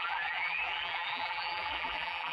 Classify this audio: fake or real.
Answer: fake